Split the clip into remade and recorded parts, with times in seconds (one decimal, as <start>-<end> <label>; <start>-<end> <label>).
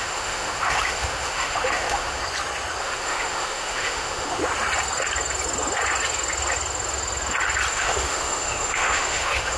0.0-2.2 remade; 2.2-2.8 recorded; 2.8-4.4 remade; 4.4-7.7 recorded; 7.7-9.6 remade